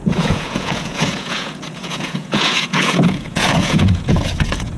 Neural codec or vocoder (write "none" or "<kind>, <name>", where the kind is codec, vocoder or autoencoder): vocoder, Vocos